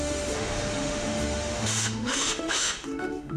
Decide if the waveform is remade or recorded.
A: remade